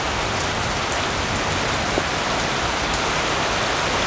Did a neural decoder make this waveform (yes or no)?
no